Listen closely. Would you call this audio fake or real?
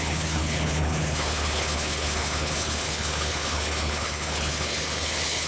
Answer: fake